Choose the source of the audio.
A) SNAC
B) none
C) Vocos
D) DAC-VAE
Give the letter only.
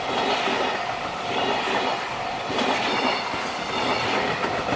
B